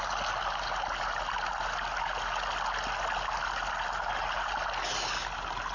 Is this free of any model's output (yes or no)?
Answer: yes